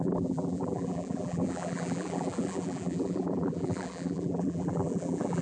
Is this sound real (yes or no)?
no